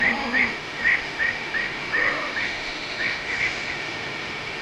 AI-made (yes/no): yes